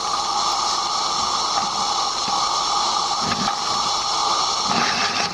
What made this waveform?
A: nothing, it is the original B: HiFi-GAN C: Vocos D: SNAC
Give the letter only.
A